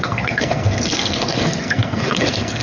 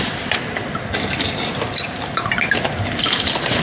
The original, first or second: second